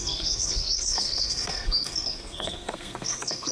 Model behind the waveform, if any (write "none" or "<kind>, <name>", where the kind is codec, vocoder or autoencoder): codec, SNAC